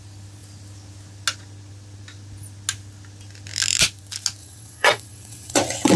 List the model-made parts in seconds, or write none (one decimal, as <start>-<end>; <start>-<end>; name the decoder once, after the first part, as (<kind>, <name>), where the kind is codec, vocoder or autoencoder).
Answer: 4.4-6.0 (vocoder, WaveNeXt)